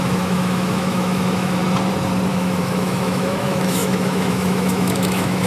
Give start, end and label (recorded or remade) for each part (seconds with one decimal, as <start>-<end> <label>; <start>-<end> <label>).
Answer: 0.0-1.6 remade; 1.6-2.3 recorded; 2.3-5.5 remade